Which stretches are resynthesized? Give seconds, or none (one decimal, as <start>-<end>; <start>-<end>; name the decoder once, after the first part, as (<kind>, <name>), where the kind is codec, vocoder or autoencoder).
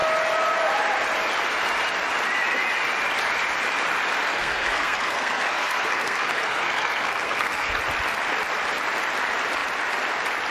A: 4.3-7.8 (codec, SNAC)